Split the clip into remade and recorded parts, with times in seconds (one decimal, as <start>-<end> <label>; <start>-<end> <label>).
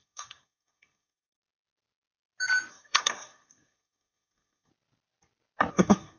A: 0.0-1.4 remade; 1.4-2.7 recorded; 2.7-4.7 remade; 4.7-5.7 recorded; 5.7-6.2 remade